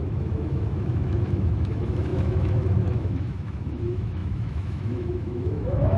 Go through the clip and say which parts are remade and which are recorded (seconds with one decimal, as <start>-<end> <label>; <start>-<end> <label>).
0.0-6.0 remade